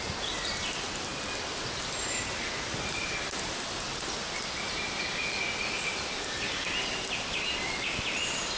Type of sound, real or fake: real